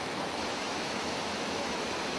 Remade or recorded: remade